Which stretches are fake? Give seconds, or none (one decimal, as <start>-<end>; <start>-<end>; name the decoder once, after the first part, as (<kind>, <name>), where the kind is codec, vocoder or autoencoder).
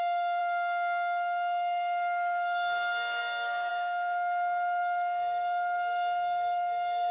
0.0-7.1 (codec, DAC)